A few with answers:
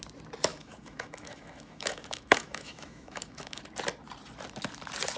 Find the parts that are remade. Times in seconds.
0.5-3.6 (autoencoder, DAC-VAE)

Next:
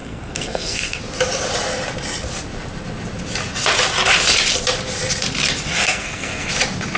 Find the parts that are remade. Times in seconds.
0.0-1.0 (codec, SNAC); 5.7-6.5

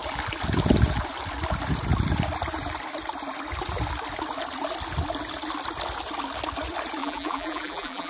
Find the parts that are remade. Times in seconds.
7.0-8.1 (vocoder, BigVGAN v2)